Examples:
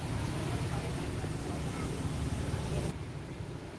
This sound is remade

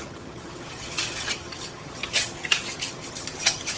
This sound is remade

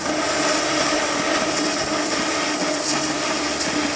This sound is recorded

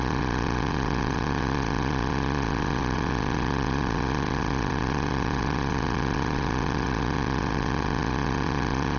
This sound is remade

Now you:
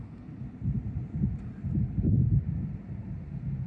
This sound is recorded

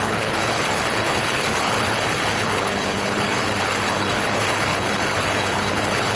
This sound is remade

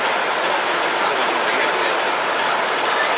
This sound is recorded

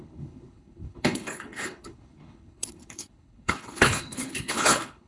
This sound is remade